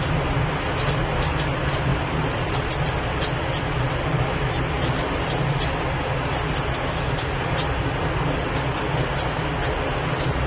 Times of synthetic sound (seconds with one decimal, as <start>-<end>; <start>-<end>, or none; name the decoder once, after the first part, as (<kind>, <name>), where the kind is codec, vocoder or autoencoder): 1.9-2.7 (vocoder, BigVGAN v2)

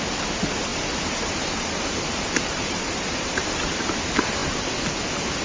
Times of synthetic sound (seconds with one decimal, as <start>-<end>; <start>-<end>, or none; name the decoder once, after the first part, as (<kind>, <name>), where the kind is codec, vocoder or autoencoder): 0.7-3.9 (vocoder, BigVGAN v2)